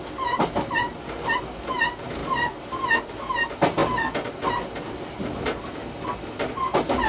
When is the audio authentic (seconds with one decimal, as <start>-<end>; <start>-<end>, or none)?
0.0-7.1